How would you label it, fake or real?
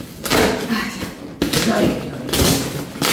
real